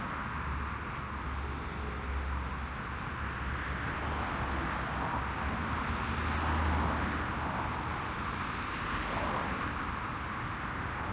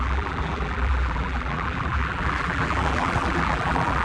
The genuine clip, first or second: first